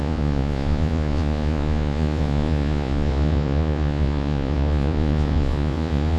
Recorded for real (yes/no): no